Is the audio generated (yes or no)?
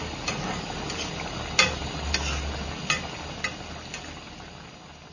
no